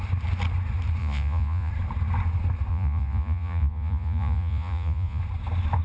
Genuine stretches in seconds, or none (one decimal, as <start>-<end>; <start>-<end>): 0.0-1.0; 1.7-2.7; 5.2-5.8